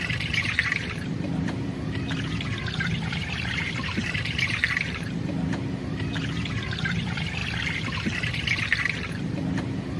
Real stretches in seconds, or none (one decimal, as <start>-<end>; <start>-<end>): 7.4-9.5